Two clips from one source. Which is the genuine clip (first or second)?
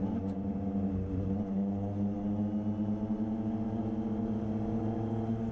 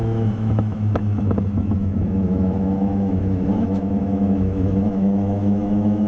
first